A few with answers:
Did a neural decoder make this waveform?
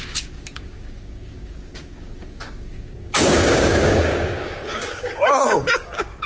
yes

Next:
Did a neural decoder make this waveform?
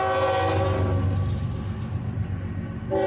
no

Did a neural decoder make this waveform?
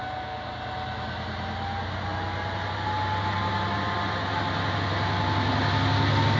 no